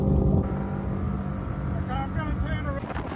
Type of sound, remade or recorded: recorded